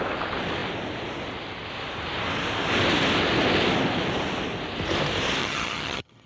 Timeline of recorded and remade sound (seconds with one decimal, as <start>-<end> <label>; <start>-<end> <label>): 0.0-5.4 recorded; 5.4-6.3 remade